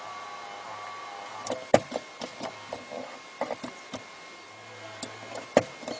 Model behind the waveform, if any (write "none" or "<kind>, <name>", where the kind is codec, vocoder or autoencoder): none